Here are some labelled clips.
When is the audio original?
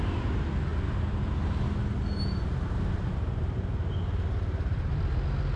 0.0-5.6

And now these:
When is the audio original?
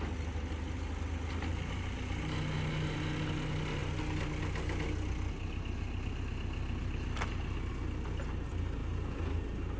0.0-9.8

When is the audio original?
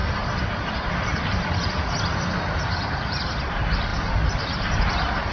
0.0-5.3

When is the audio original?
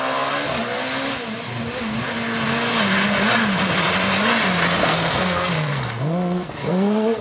0.0-4.8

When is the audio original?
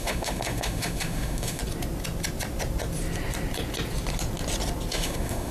1.6-4.9